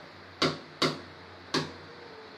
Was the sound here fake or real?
real